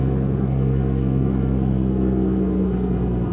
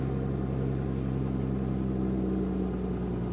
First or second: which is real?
second